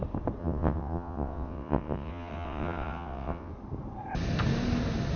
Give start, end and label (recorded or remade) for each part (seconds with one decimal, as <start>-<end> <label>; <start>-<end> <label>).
0.0-0.4 recorded; 0.4-3.5 remade; 3.5-5.2 recorded

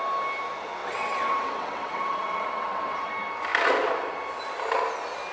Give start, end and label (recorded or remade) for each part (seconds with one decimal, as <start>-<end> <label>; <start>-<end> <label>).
0.0-0.8 recorded; 0.8-3.1 remade; 3.1-5.3 recorded

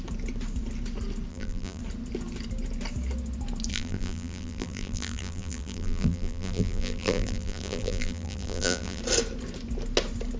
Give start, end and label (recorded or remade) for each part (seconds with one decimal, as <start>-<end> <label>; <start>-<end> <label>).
0.0-1.3 recorded; 1.3-1.8 remade; 1.8-3.7 recorded; 3.7-9.0 remade; 9.0-10.4 recorded

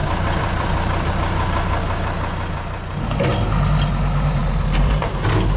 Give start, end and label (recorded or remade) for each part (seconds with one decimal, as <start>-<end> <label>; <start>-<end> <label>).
0.0-1.1 remade; 1.1-4.4 recorded; 4.4-5.1 remade; 5.1-5.6 recorded

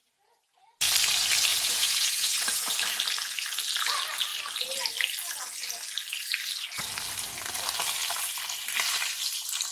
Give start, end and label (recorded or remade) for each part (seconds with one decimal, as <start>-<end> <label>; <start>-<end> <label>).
0.0-0.9 remade; 0.9-1.5 recorded; 1.5-2.7 remade; 2.7-9.7 recorded

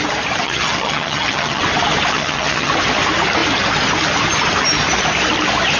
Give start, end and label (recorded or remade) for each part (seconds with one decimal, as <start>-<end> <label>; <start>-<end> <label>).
0.0-0.4 recorded; 0.4-1.6 remade; 1.6-2.1 recorded; 2.1-2.7 remade; 2.7-5.8 recorded